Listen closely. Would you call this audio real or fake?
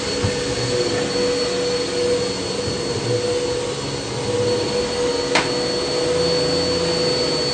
real